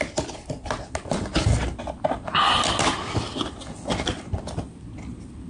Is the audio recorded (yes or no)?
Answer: yes